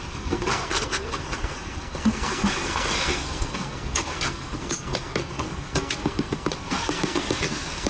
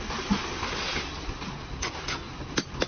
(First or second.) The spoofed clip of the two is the first